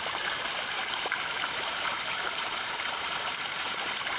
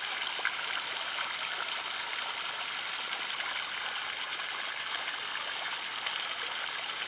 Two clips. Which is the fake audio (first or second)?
first